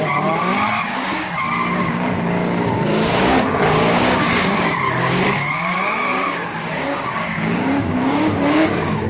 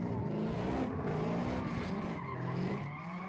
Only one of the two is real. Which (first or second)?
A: second